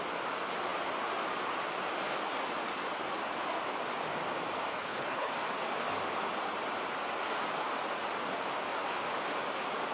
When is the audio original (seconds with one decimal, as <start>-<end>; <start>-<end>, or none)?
0.0-4.7; 5.3-9.9